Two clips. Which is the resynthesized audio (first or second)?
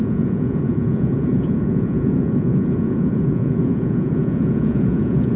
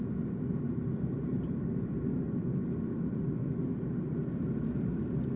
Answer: first